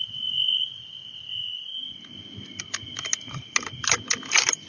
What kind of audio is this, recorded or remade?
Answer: recorded